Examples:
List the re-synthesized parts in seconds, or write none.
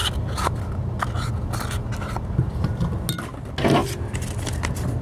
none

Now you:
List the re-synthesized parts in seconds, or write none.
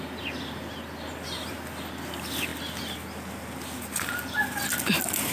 none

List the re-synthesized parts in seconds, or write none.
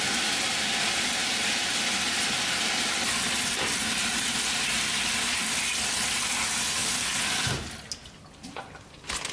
1.2-4.4 (vocoder, BigVGAN v2); 6.8-7.5; 8.0-9.3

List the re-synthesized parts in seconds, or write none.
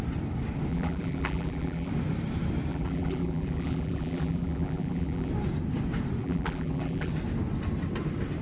0.7-1.9 (vocoder, BigVGAN v2); 2.7-5.3; 6.2-7.1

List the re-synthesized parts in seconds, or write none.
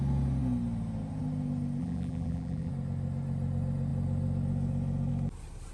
1.8-2.7 (vocoder, BigVGAN v2)